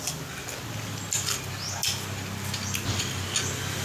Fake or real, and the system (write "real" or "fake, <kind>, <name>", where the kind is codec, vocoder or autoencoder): real